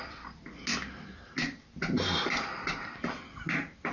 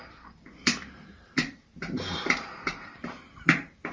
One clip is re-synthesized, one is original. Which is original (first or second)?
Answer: first